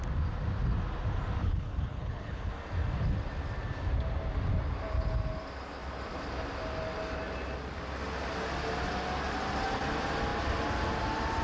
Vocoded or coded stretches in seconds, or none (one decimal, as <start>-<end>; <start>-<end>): 1.4-2.5